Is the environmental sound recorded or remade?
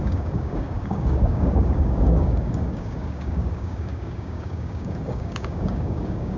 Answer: remade